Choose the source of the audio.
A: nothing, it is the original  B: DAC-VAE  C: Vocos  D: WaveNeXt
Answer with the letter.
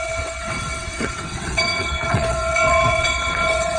D